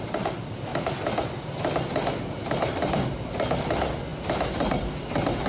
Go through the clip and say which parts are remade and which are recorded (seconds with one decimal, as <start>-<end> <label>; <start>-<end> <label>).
0.0-5.5 recorded